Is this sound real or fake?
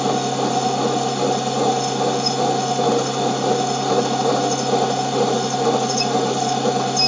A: real